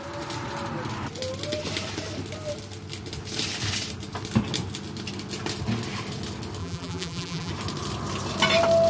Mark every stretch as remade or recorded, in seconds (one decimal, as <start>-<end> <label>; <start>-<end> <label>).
0.0-6.6 recorded; 6.6-7.5 remade; 7.5-8.9 recorded